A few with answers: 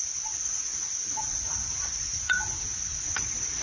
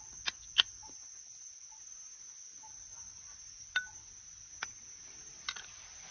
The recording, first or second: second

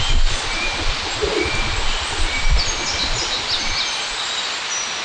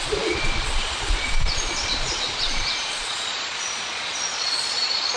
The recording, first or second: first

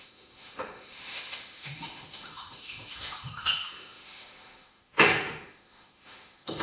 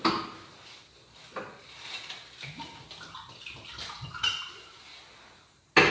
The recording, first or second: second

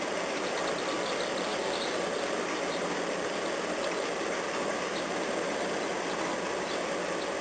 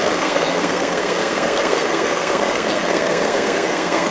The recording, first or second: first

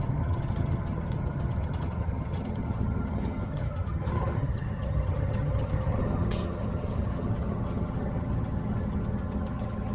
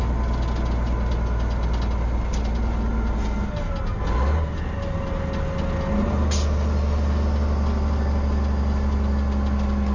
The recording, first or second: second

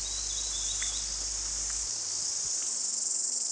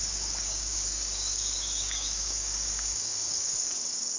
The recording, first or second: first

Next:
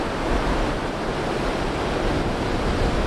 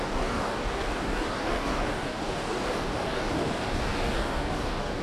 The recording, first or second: first